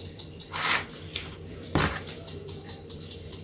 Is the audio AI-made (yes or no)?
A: yes